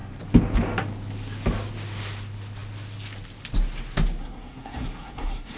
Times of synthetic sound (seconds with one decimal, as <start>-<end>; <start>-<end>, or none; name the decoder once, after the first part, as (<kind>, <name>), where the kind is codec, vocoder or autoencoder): 4.2-5.6 (codec, SNAC)